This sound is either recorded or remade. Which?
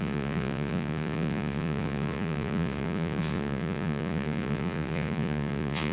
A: remade